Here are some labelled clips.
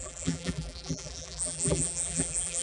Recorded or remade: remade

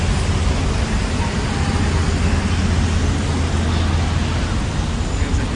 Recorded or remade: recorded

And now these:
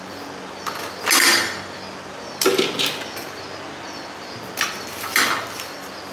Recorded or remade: recorded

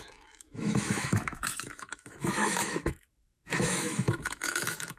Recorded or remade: remade